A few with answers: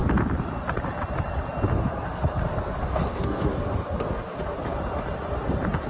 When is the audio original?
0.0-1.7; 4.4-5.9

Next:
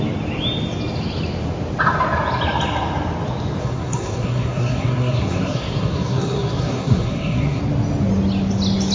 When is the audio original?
0.0-3.6; 7.6-8.9

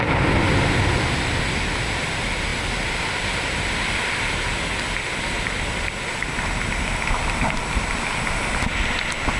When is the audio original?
0.0-9.4